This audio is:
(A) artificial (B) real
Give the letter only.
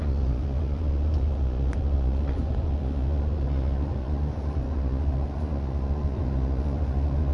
A